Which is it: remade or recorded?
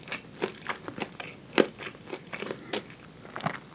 recorded